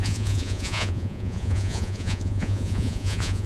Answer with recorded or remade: remade